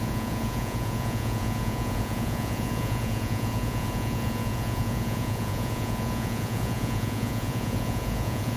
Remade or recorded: remade